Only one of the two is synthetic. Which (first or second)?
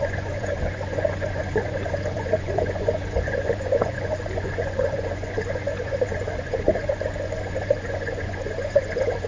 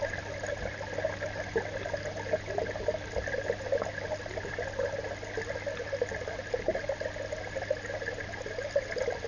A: first